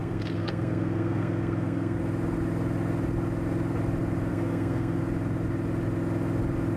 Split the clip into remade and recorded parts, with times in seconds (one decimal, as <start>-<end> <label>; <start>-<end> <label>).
0.0-2.0 remade; 2.0-4.3 recorded; 4.3-5.0 remade; 5.0-6.8 recorded